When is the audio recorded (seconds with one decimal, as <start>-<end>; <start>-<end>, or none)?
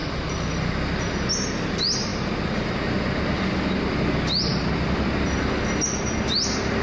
0.0-6.8